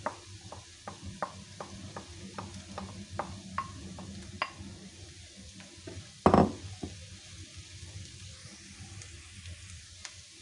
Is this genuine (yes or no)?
yes